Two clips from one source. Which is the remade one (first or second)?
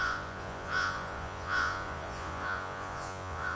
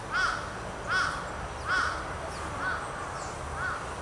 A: first